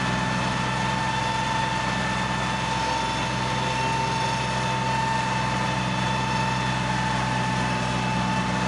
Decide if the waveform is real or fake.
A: real